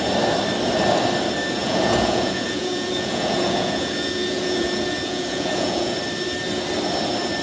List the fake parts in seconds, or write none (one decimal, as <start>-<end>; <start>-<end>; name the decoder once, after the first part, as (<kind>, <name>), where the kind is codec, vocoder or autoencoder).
1.6-6.0 (vocoder, Vocos)